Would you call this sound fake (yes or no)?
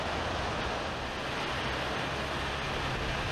no